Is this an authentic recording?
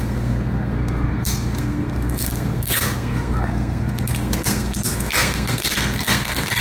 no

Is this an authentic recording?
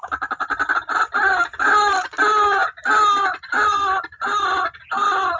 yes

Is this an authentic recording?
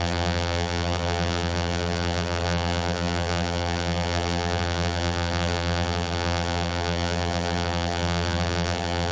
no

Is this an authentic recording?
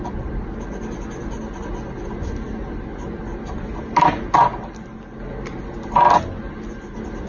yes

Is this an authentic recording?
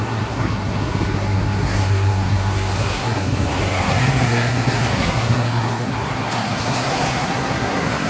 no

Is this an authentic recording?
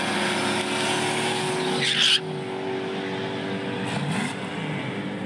yes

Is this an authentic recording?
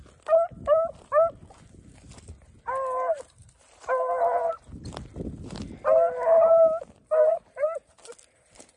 yes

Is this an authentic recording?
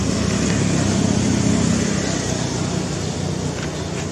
yes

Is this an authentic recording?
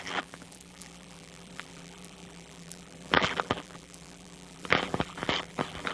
no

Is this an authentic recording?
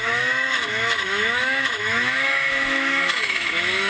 no